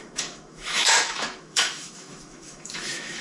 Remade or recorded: remade